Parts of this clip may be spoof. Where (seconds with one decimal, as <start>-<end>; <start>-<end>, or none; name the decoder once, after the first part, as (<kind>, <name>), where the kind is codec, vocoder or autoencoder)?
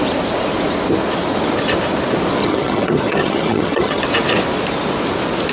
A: 2.4-4.0 (vocoder, HiFi-GAN)